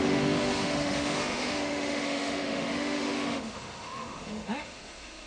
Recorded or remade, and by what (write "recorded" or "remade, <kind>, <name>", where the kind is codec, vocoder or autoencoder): remade, autoencoder, DAC-VAE